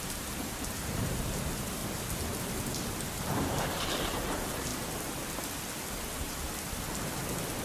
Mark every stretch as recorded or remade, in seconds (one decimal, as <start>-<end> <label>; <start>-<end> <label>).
0.0-1.8 remade; 1.8-2.9 recorded; 2.9-4.7 remade; 4.7-7.6 recorded

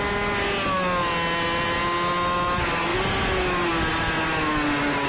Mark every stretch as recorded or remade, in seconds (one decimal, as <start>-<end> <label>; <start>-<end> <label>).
0.0-5.1 recorded

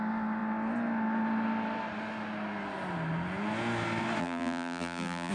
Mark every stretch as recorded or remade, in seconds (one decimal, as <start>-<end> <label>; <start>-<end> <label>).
0.0-4.2 recorded; 4.2-5.3 remade

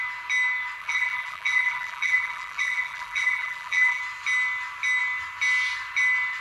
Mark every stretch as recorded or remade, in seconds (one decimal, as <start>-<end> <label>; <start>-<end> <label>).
0.0-0.8 recorded; 0.8-4.0 remade; 4.0-6.4 recorded

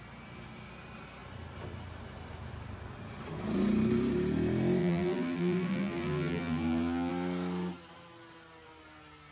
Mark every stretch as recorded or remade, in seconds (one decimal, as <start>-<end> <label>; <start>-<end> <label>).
0.0-4.8 recorded; 4.8-7.1 remade; 7.1-9.3 recorded

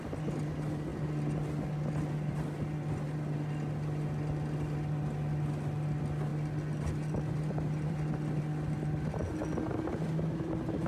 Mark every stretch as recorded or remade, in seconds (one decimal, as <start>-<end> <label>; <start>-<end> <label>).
0.0-10.9 recorded

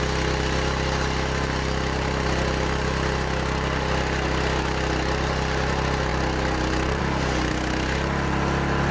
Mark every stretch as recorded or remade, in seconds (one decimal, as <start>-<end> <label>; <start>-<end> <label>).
0.0-6.1 recorded; 6.1-7.0 remade; 7.0-8.9 recorded

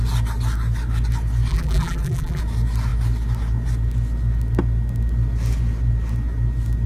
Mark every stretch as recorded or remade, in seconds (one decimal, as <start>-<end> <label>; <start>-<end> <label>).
0.0-1.5 recorded; 1.5-2.4 remade; 2.4-6.9 recorded